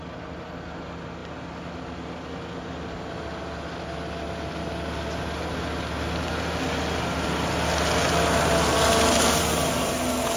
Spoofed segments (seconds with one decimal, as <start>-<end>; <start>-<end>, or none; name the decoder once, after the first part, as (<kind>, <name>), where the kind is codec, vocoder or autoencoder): none